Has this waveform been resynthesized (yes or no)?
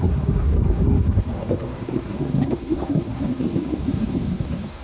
yes